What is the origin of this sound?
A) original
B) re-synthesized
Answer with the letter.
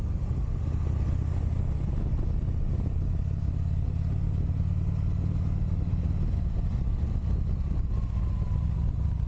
A